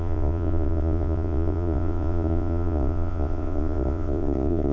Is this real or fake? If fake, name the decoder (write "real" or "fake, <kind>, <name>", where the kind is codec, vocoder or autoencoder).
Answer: fake, vocoder, Vocos